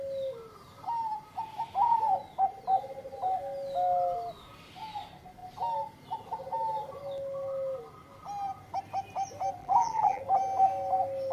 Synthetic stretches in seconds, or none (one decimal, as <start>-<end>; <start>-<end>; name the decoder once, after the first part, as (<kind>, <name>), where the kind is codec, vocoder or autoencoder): 9.6-10.2 (vocoder, BigVGAN v2)